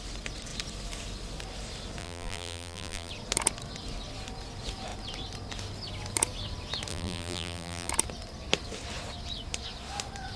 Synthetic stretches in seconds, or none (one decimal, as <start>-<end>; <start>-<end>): 2.0-3.1; 6.9-7.9

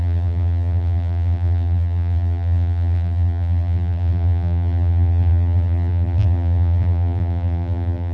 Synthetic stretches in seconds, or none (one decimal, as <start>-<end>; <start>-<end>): 0.0-8.1

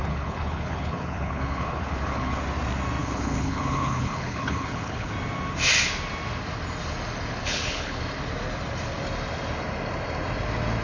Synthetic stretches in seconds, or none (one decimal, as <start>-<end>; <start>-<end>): 0.0-2.4; 3.0-5.1; 7.4-8.0